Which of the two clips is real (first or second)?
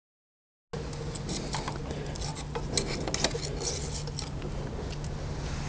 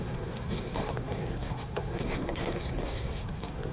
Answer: first